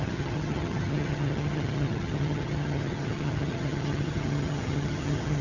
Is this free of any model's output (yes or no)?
no